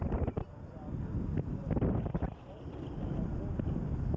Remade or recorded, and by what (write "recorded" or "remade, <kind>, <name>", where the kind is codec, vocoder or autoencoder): recorded